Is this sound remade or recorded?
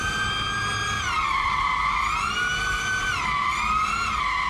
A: recorded